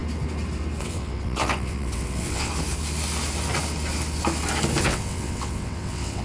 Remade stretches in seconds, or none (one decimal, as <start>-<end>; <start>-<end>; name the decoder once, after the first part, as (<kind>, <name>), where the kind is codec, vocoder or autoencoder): 0.8-2.5 (vocoder, WaveNeXt); 4.8-6.2